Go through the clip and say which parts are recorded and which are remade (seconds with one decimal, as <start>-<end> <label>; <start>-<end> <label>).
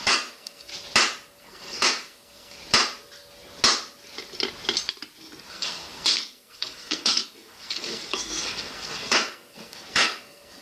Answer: 0.0-0.7 remade; 0.7-1.4 recorded; 1.4-2.6 remade; 2.6-5.5 recorded; 5.5-10.6 remade